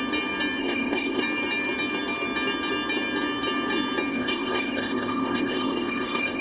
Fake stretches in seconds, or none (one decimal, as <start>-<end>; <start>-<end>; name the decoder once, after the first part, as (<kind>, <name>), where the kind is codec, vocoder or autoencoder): 0.6-1.2 (codec, ZipCodec); 4.1-6.4